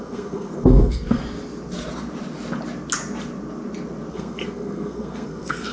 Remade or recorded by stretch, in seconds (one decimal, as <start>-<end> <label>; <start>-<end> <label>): 0.0-1.2 remade; 1.2-4.1 recorded; 4.1-5.7 remade